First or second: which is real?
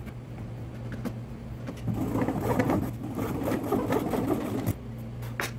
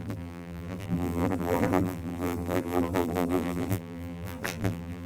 first